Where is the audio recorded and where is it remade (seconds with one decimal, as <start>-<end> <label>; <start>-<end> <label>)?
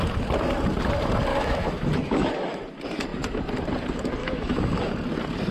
0.0-1.3 recorded; 1.3-2.6 remade; 2.6-4.2 recorded; 4.2-4.9 remade; 4.9-5.5 recorded